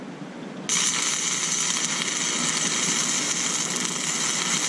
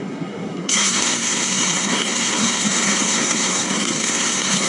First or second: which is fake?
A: second